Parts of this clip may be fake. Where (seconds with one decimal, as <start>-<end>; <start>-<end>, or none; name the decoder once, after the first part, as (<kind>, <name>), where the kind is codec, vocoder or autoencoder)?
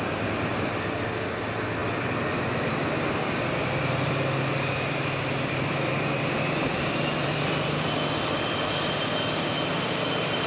0.0-10.5 (vocoder, BigVGAN v2)